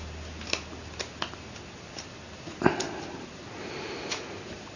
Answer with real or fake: real